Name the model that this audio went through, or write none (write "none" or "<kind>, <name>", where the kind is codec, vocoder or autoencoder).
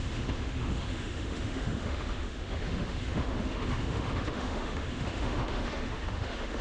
autoencoder, DAC-VAE